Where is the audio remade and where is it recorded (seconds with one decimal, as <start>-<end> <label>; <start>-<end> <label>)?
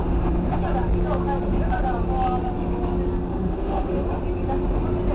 0.0-0.6 remade; 0.6-3.3 recorded; 3.3-4.0 remade; 4.0-5.1 recorded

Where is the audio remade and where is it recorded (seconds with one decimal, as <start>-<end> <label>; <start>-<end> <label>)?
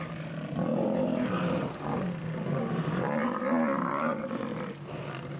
0.0-0.7 remade; 0.7-3.9 recorded; 3.9-5.4 remade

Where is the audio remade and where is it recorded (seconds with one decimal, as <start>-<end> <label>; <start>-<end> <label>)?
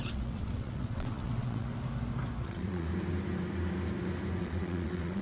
0.0-1.7 remade; 1.7-2.4 recorded; 2.4-2.9 remade; 2.9-4.4 recorded; 4.4-5.2 remade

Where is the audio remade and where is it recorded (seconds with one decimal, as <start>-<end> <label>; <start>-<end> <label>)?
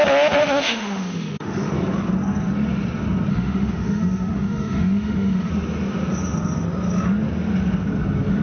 0.0-0.4 recorded; 0.4-1.7 remade; 1.7-3.3 recorded; 3.3-5.5 remade; 5.5-8.4 recorded